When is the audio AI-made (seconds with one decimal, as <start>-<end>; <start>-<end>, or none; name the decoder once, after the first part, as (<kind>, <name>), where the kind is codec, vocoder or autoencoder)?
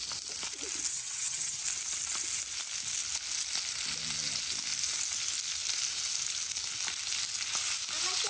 0.9-1.6 (vocoder, HiFi-GAN)